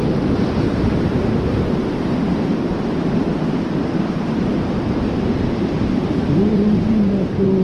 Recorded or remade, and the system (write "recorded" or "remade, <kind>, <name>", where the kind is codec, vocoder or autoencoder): remade, vocoder, BigVGAN v2